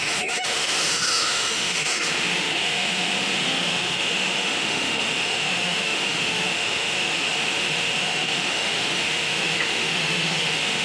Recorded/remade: remade